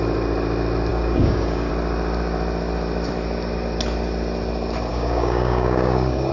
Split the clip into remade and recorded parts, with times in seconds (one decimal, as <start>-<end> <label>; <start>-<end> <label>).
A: 0.0-0.9 recorded; 0.9-1.7 remade; 1.7-4.9 recorded; 4.9-6.3 remade